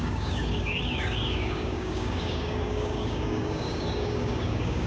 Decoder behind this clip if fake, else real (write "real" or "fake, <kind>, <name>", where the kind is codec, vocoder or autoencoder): fake, codec, DAC